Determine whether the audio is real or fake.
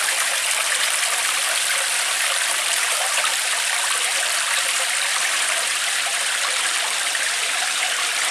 fake